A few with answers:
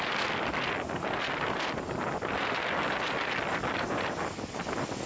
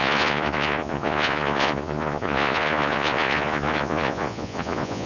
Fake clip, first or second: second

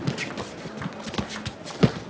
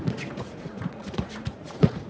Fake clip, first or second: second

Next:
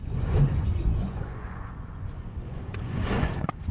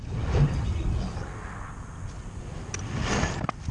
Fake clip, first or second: first